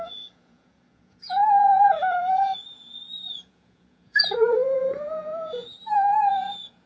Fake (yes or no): yes